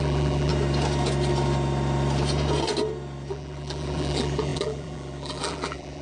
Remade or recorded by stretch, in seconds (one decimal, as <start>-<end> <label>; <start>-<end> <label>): 0.0-0.5 remade; 0.5-3.3 recorded; 3.3-6.0 remade